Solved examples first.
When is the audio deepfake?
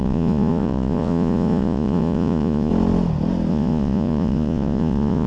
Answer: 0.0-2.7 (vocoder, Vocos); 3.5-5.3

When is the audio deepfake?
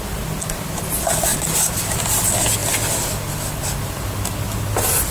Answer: none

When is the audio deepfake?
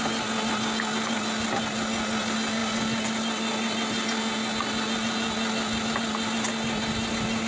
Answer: none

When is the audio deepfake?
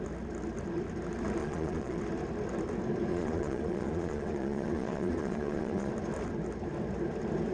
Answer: 1.4-2.0 (vocoder, Vocos); 3.1-5.9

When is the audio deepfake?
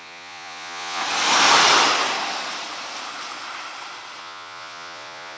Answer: 0.0-1.0 (vocoder, Vocos); 4.2-5.4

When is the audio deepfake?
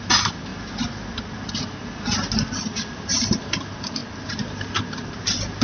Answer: none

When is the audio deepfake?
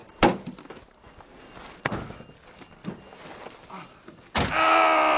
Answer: none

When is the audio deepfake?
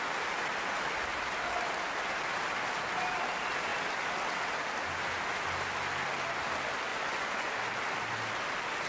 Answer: 6.9-7.5 (vocoder, Vocos)